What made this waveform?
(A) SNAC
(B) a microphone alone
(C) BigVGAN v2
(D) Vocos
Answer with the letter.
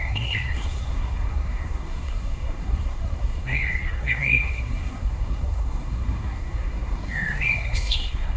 A